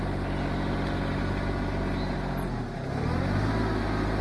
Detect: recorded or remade recorded